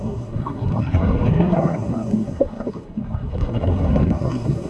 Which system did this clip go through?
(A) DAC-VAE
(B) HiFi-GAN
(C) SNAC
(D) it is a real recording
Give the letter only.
C